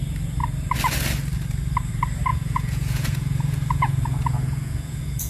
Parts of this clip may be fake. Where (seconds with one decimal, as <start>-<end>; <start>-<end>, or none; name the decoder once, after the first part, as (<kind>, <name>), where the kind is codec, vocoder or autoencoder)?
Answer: 2.3-5.3 (vocoder, Vocos)

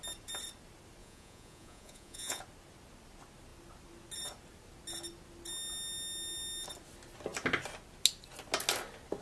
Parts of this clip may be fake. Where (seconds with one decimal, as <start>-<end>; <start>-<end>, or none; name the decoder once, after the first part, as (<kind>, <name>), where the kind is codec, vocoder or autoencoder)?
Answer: 1.0-2.4 (vocoder, Vocos)

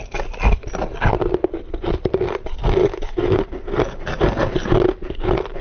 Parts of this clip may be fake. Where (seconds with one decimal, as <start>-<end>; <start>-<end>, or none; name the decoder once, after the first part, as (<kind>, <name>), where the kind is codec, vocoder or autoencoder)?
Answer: 2.8-3.4 (autoencoder, DAC-VAE)

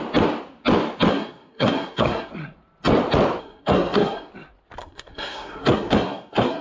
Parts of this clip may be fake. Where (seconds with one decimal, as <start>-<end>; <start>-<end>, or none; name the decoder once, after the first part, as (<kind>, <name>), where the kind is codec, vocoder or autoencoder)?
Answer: 1.1-2.3 (codec, SNAC); 3.4-4.3; 4.8-6.6

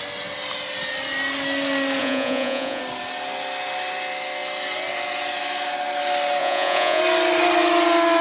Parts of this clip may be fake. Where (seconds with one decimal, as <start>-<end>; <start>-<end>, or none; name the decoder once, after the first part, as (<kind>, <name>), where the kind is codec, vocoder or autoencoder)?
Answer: 2.0-2.8 (vocoder, Vocos); 6.4-7.0

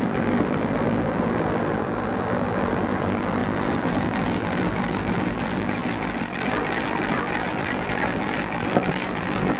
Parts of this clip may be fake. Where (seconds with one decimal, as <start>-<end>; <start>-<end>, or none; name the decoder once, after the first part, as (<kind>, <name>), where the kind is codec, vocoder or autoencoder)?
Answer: 0.0-9.6 (vocoder, BigVGAN v2)